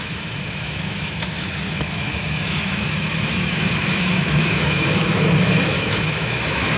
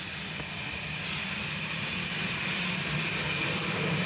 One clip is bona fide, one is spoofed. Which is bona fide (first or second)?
second